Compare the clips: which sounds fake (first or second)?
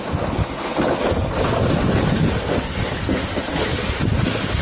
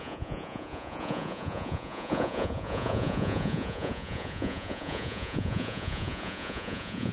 second